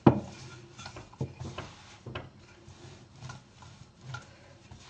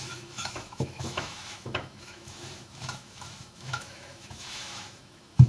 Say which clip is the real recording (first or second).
first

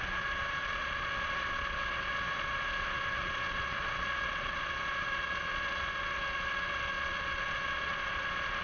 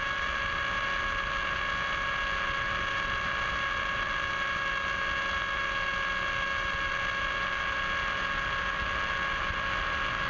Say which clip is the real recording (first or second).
second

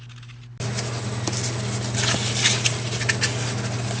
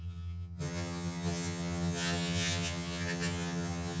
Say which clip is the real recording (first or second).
first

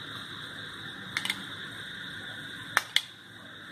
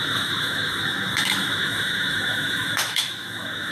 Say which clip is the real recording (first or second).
first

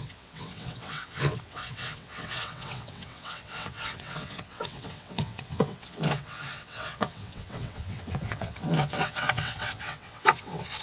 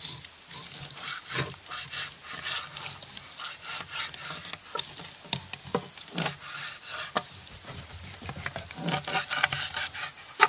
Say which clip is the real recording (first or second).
second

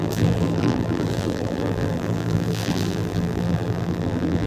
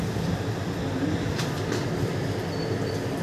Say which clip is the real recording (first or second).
second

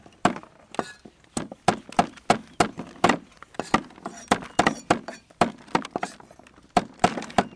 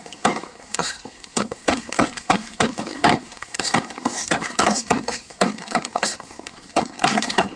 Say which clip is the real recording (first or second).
first